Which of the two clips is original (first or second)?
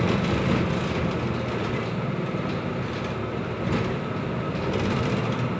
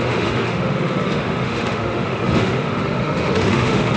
first